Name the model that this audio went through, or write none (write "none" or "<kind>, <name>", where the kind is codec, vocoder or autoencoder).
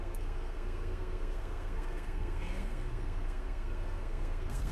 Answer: codec, SNAC